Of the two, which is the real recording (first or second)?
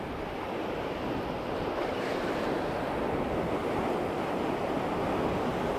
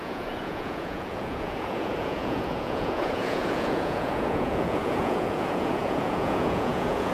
first